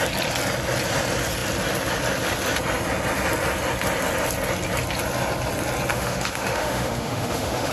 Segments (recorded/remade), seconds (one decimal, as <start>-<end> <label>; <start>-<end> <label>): 0.0-5.9 recorded; 5.9-7.7 remade